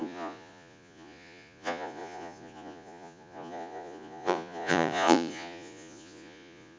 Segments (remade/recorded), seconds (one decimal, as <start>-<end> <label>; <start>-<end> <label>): 0.0-6.8 remade